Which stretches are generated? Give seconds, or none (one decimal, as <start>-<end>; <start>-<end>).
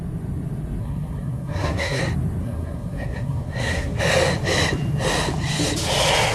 0.8-2.0; 2.4-4.0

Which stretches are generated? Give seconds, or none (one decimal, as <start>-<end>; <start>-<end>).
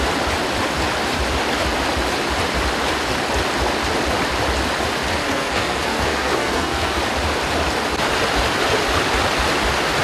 5.2-7.0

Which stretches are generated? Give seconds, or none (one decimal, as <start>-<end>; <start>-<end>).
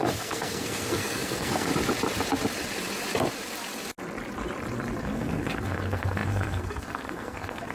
0.0-1.7; 5.0-7.7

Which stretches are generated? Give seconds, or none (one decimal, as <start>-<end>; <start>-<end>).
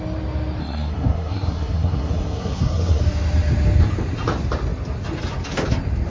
0.6-3.0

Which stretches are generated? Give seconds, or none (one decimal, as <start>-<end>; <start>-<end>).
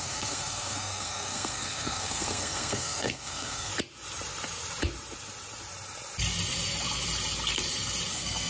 0.0-3.7; 8.1-8.5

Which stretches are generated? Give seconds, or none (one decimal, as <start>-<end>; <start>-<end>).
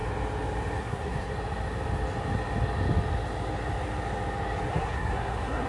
0.8-1.3; 4.7-5.7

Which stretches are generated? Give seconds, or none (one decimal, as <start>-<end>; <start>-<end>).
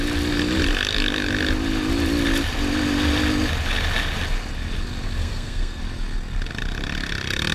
5.2-5.8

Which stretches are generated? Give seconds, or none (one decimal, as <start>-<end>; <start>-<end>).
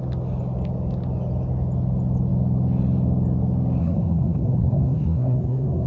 3.8-5.9